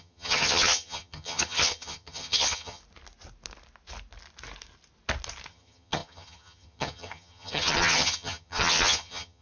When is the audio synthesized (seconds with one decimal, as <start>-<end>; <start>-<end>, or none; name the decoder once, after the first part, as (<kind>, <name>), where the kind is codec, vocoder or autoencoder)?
0.0-2.8 (vocoder, HiFi-GAN); 5.5-9.4